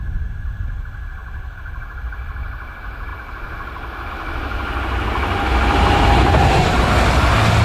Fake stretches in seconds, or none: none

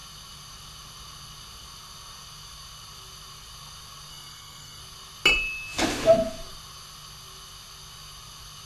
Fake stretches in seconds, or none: 4.1-4.8

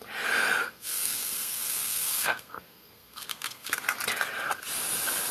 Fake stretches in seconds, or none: 0.6-3.8

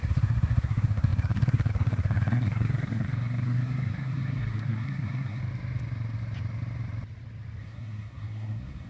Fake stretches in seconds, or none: 0.0-5.4; 7.6-8.9

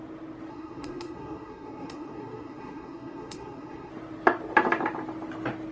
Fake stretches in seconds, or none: 0.5-3.9

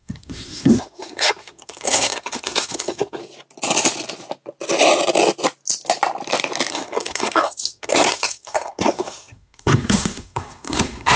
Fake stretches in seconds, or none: 0.0-3.2; 6.7-11.2